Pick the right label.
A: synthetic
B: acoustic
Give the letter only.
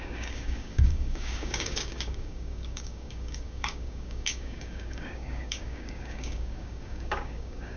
A